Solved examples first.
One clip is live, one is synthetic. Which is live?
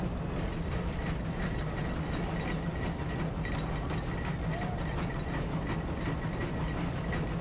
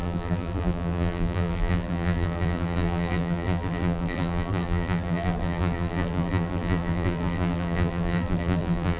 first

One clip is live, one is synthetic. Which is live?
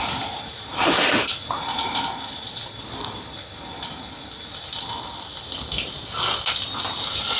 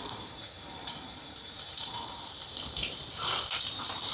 first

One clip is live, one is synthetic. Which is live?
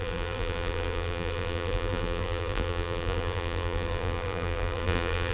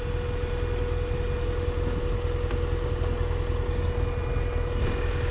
second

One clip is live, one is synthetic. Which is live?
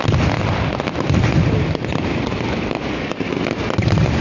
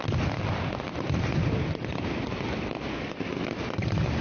first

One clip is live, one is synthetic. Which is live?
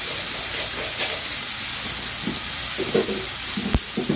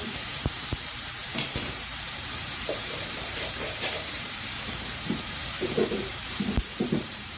first